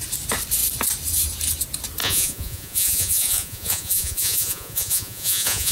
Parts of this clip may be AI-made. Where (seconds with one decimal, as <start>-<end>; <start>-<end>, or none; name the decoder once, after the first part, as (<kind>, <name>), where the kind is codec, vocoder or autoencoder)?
2.0-5.7 (vocoder, Vocos)